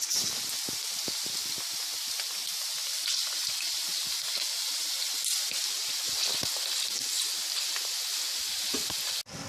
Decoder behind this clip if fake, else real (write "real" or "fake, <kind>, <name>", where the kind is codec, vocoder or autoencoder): real